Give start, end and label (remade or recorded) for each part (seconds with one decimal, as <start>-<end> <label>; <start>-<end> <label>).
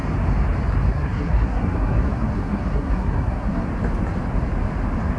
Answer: 0.0-0.9 recorded; 0.9-3.7 remade; 3.7-5.2 recorded